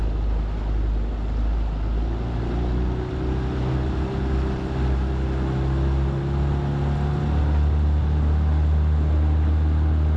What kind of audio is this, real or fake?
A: real